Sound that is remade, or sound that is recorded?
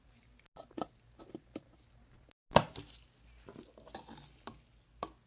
recorded